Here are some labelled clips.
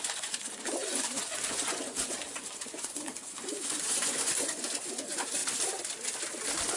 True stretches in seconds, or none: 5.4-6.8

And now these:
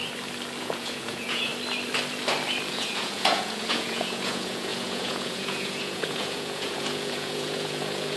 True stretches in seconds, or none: 0.0-0.6; 1.5-2.7

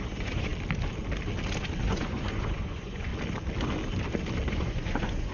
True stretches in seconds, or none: 0.5-1.8; 3.1-4.5

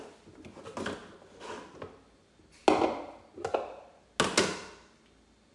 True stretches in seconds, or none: 0.0-5.5

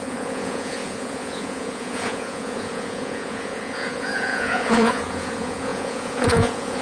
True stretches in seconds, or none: none

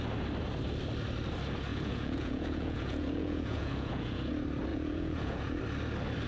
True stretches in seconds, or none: 0.0-1.7; 4.3-4.7; 5.6-6.3

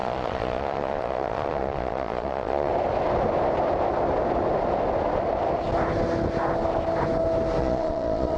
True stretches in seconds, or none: 2.7-7.6

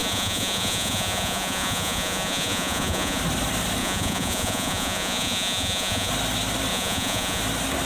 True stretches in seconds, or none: 3.2-3.8; 6.1-6.7; 7.4-7.9